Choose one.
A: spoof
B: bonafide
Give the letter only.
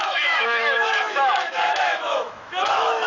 A